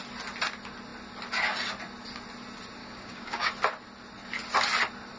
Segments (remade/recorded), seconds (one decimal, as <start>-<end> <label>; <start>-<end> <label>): 0.0-2.8 recorded; 2.8-3.5 remade; 3.5-5.2 recorded